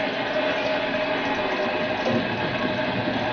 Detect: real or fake real